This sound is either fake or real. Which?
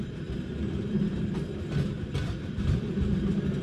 real